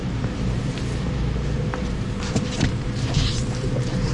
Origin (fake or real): fake